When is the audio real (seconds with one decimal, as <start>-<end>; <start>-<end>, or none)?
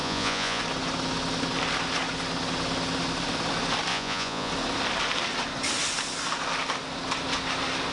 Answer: 0.6-3.9; 4.5-7.9